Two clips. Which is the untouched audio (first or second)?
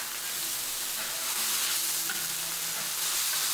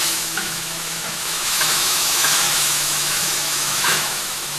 first